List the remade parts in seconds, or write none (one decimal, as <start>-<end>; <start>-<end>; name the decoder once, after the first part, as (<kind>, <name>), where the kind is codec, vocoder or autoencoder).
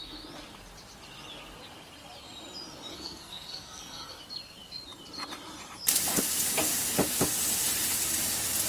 2.9-4.2 (codec, SNAC)